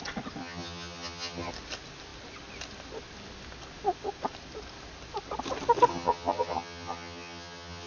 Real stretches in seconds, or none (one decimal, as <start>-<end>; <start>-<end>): 0.0-0.4; 1.5-5.9